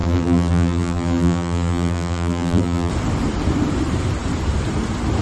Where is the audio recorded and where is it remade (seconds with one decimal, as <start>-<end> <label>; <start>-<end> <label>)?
0.0-2.9 remade; 2.9-5.2 recorded

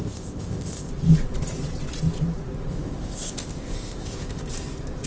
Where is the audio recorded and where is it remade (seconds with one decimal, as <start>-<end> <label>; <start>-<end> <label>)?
0.0-0.9 remade; 0.9-2.7 recorded; 2.7-4.4 remade; 4.4-5.1 recorded

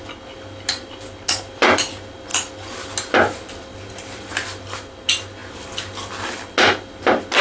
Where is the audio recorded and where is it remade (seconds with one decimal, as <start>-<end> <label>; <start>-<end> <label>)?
0.0-7.4 recorded

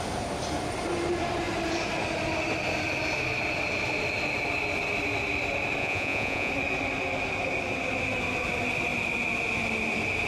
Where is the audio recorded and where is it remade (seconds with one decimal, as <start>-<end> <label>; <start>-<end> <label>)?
0.0-5.8 recorded; 5.8-6.5 remade; 6.5-10.3 recorded

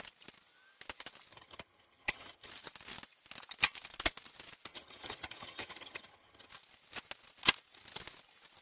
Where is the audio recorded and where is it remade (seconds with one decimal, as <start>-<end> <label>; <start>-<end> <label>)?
0.0-1.3 recorded; 1.3-2.5 remade; 2.5-4.7 recorded; 4.7-6.5 remade; 6.5-8.6 recorded

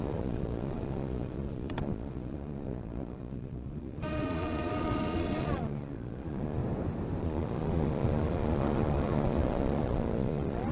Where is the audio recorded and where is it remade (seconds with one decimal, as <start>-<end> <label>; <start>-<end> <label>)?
0.0-6.6 remade; 6.6-7.2 recorded; 7.2-10.7 remade